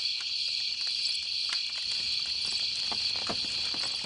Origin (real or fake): real